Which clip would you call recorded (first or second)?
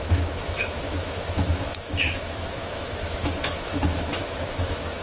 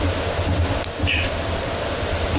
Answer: second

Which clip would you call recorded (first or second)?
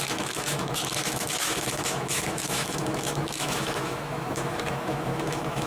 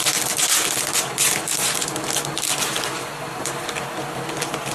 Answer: second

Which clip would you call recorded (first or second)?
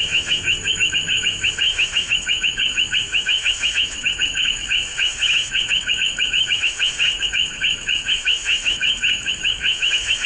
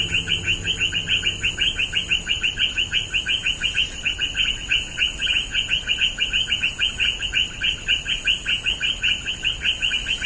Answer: second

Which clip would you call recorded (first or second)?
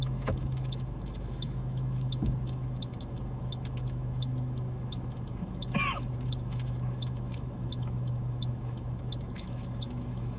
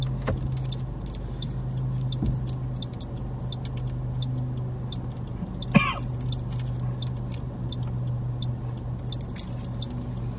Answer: second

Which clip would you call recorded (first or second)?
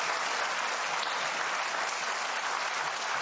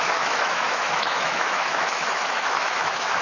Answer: first